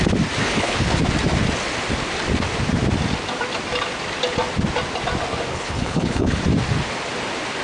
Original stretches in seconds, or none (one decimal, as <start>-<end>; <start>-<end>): 0.0-0.4; 1.0-5.5; 6.4-7.6